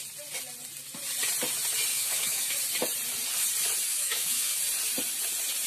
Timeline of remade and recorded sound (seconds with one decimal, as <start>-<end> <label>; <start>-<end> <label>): 0.0-1.9 recorded; 1.9-2.6 remade; 2.6-3.9 recorded; 3.9-4.6 remade; 4.6-5.7 recorded